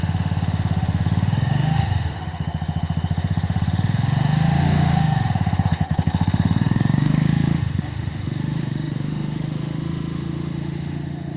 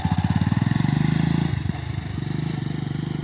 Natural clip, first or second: second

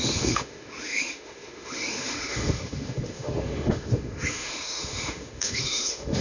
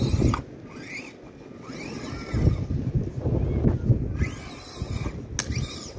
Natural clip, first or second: second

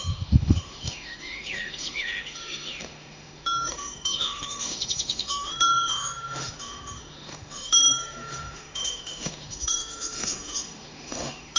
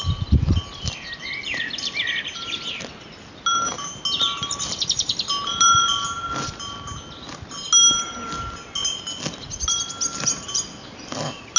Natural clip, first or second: second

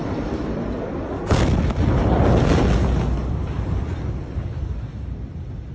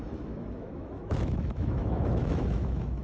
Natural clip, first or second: first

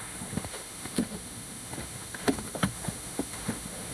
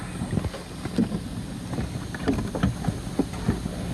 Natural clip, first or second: second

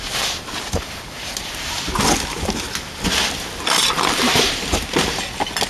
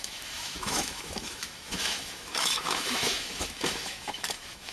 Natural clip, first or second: first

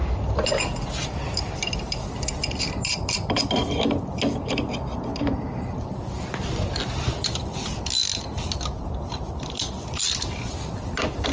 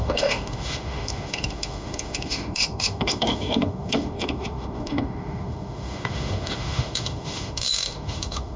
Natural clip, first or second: first